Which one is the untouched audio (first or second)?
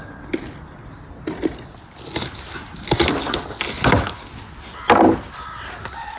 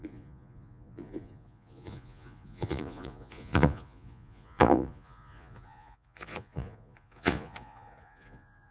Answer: first